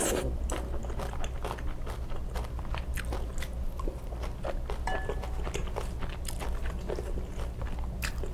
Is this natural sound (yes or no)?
yes